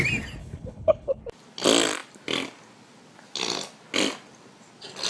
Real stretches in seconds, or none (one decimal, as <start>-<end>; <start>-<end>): 0.0-0.4; 1.2-5.1